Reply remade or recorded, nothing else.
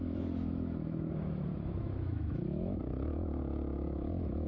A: remade